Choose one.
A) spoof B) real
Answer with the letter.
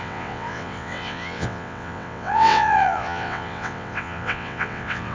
A